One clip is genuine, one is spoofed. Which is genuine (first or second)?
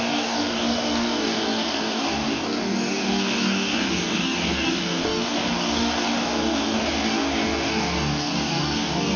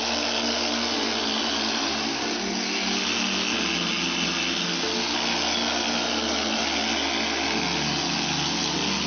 second